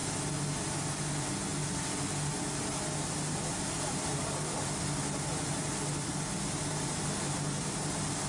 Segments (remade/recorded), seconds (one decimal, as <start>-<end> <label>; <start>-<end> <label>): 0.0-8.3 recorded